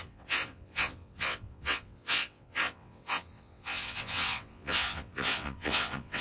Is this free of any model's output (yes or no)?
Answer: no